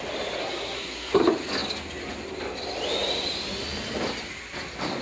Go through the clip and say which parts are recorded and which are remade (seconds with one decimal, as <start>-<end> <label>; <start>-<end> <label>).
0.0-0.4 recorded; 0.4-1.2 remade; 1.2-5.0 recorded